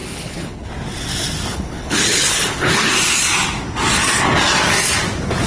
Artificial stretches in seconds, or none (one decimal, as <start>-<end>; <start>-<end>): 0.0-0.7; 1.5-2.9